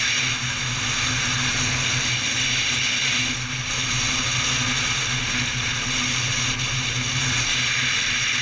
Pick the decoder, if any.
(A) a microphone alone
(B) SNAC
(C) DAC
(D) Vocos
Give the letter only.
A